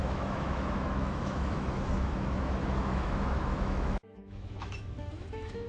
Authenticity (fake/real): fake